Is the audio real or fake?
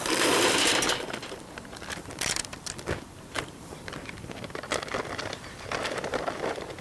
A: fake